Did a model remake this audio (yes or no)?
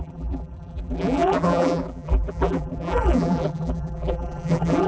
yes